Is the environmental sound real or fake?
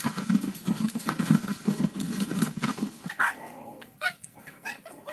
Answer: fake